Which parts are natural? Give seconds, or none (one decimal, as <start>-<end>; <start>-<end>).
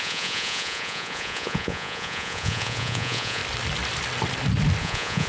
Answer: 3.4-4.8